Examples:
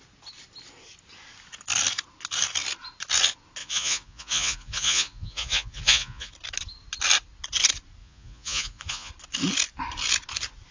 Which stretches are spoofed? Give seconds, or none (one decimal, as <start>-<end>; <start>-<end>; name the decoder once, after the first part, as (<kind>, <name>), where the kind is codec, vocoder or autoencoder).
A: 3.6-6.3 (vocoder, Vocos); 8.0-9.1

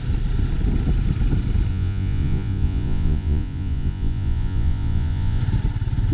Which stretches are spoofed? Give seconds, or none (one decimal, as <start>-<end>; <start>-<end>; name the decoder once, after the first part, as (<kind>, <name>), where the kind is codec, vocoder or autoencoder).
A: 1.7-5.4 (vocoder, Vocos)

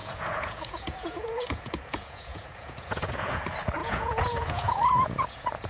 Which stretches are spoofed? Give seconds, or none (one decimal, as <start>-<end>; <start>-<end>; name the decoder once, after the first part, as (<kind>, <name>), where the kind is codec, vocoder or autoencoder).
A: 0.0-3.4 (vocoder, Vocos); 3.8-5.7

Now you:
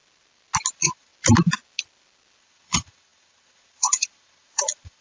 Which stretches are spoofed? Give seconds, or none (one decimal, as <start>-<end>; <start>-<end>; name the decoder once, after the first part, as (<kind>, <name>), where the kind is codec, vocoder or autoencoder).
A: 0.7-1.1 (vocoder, Vocos); 2.4-5.0

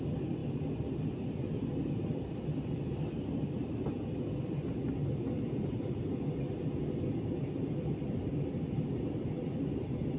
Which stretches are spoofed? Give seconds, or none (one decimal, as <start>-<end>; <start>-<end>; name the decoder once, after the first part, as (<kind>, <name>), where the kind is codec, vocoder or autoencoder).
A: none

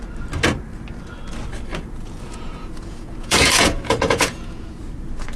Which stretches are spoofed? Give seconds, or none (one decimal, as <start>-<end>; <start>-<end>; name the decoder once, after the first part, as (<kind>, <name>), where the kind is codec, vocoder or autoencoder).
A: 1.7-4.9 (vocoder, Vocos)

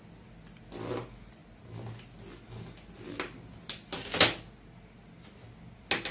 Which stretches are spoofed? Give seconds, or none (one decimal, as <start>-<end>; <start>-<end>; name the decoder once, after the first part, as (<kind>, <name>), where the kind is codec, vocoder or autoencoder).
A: none